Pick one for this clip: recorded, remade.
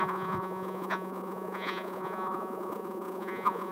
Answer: remade